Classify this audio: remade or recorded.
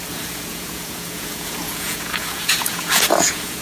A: remade